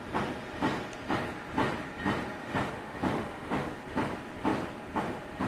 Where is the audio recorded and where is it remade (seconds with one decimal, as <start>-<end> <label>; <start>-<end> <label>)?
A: 0.0-2.4 recorded; 2.4-3.7 remade; 3.7-5.5 recorded